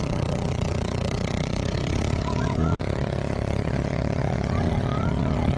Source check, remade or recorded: remade